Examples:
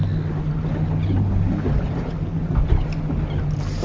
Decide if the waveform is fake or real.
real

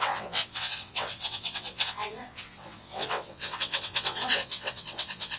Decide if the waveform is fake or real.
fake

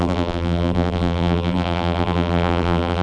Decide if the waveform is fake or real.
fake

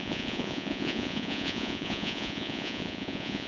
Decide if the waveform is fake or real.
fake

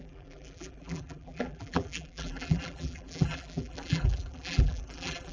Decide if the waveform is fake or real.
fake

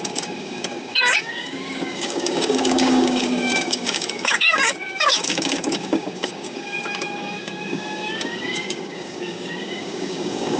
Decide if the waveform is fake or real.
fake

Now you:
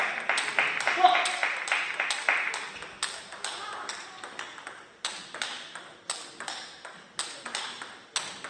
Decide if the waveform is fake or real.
real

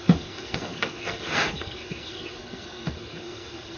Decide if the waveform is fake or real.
fake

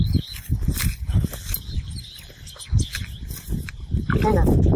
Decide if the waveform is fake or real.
real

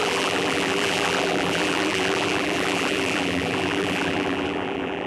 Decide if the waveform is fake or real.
fake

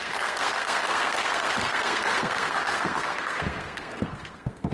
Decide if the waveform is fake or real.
fake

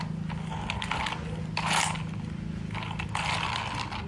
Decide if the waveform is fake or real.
real